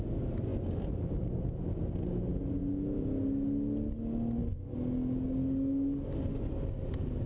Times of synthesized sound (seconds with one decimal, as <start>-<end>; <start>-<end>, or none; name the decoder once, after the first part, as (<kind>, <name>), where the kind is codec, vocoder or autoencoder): none